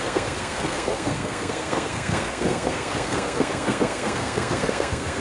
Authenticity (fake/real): fake